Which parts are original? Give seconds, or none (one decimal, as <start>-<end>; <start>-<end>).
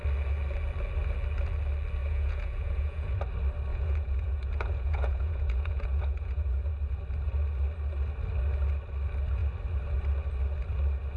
0.0-2.0; 3.2-3.7; 6.7-11.2